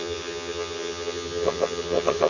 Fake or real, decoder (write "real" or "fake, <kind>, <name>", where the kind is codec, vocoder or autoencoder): fake, vocoder, HiFi-GAN